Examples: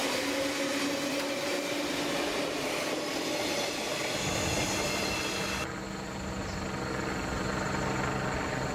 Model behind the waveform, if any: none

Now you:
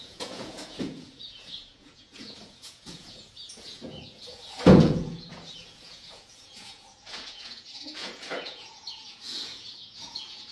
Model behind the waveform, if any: vocoder, Vocos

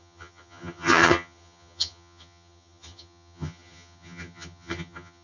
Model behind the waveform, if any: vocoder, HiFi-GAN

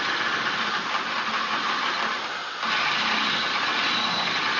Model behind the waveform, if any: none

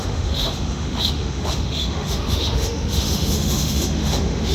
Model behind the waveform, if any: autoencoder, DAC-VAE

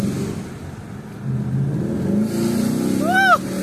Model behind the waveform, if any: none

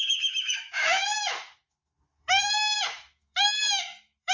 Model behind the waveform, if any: autoencoder, DAC-VAE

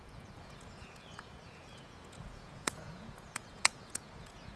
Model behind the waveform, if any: vocoder, Vocos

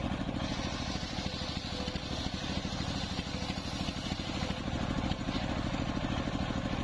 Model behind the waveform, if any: none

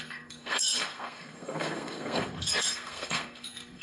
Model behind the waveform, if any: codec, SNAC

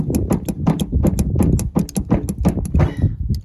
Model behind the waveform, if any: none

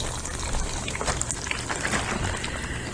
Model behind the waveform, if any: none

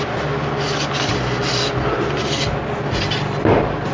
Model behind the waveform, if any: none